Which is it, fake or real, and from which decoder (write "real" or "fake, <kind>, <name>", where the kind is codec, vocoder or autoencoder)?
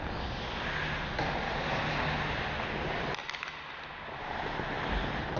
real